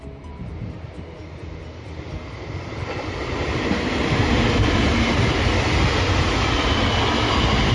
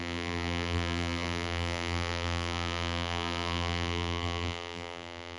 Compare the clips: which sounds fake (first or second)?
second